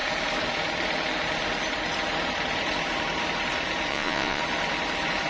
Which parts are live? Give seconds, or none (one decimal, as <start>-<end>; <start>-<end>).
0.0-3.9; 4.4-5.3